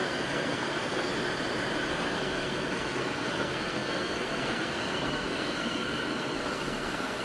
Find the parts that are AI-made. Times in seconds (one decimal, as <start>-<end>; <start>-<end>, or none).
0.0-1.1; 1.9-7.2